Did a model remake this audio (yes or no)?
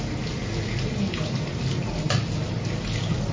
no